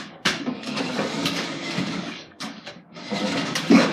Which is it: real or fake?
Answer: fake